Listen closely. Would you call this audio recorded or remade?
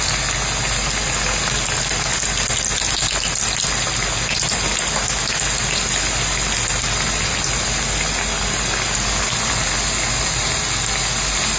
recorded